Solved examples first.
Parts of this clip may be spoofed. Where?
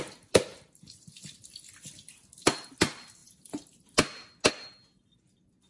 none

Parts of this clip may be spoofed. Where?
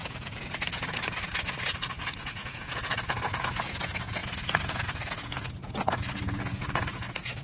0.0-7.4 (vocoder, Vocos)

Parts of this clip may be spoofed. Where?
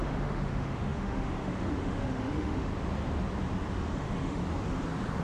0.0-2.7 (autoencoder, DAC-VAE); 3.7-4.4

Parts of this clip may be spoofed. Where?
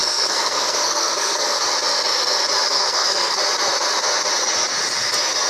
0.0-1.6 (codec, SNAC); 2.7-3.4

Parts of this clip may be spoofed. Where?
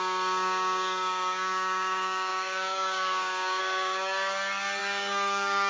0.0-5.7 (codec, DAC)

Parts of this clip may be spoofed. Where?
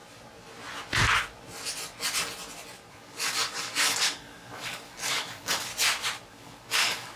2.9-5.7 (codec, DAC); 6.3-7.2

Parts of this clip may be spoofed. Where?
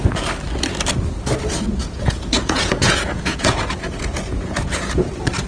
1.8-5.1 (vocoder, Vocos)